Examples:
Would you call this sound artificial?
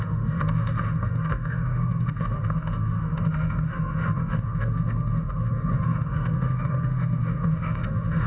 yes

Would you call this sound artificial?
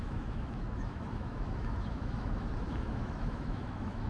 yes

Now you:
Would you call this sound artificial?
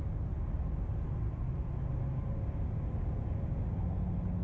no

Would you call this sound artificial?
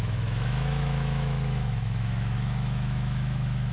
yes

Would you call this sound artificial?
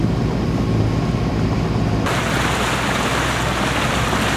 no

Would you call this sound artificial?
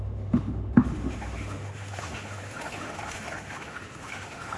yes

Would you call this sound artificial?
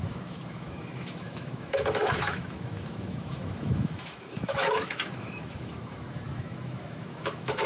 yes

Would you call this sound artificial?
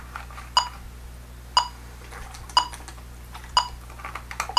no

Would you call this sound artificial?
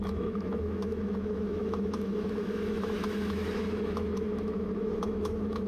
yes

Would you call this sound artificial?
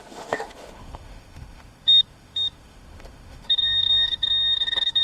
yes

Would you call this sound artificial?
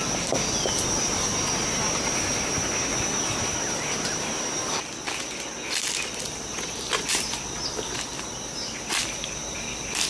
no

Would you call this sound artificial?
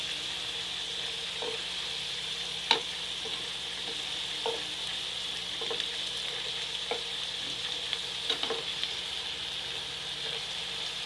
no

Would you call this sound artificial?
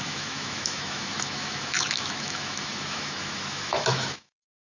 yes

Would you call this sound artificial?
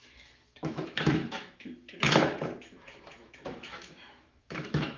yes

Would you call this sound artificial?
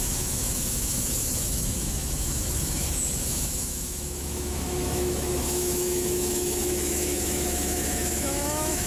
yes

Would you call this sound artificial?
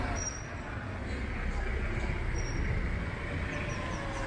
no